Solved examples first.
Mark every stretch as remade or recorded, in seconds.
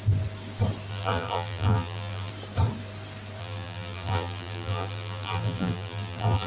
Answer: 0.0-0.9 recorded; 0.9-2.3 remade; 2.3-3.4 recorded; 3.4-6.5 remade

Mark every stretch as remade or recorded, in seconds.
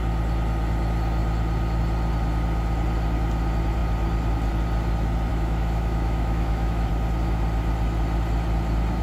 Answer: 0.0-5.3 recorded; 5.3-6.9 remade; 6.9-9.0 recorded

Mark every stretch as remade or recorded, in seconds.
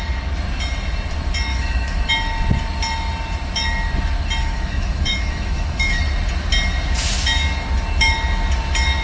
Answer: 0.0-1.5 recorded; 1.5-2.1 remade; 2.1-4.4 recorded; 4.4-6.0 remade; 6.0-9.0 recorded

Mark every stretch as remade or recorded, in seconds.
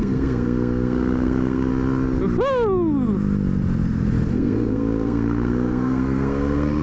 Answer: 0.0-1.7 remade; 1.7-4.3 recorded; 4.3-6.8 remade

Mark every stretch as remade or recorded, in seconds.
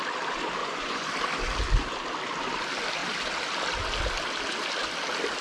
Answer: 0.0-0.6 recorded; 0.6-1.1 remade; 1.1-5.4 recorded